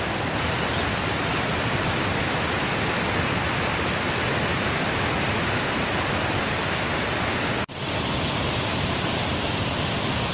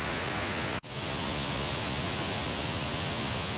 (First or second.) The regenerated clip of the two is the second